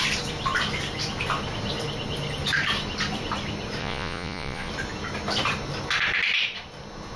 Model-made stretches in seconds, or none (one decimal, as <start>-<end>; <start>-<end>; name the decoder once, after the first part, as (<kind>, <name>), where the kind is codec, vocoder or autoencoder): 3.8-4.7 (vocoder, Vocos)